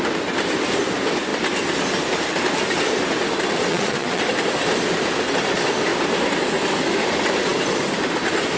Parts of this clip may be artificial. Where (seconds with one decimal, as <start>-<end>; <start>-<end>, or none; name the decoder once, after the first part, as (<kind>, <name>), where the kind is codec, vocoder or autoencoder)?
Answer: 3.7-4.2 (vocoder, Vocos)

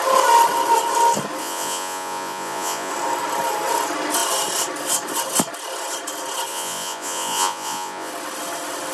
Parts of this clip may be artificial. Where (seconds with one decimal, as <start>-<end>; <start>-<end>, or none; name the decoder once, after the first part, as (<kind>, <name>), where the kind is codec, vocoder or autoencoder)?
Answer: 1.4-2.9 (vocoder, Vocos); 6.5-8.1

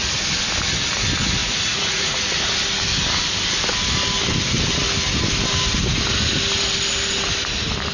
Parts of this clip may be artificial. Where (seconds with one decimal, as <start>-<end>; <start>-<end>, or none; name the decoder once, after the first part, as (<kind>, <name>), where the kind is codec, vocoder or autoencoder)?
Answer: 1.4-2.3 (vocoder, Vocos)

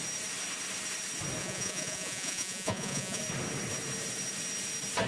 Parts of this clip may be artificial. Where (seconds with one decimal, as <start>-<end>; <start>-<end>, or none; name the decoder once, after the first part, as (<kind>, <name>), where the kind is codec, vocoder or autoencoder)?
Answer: 1.4-3.2 (vocoder, Vocos)

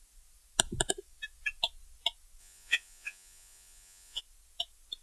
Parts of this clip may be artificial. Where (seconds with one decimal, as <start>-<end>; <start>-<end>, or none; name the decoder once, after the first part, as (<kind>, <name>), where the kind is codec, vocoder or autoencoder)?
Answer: 2.4-4.2 (vocoder, Vocos)